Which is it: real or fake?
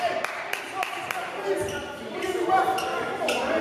real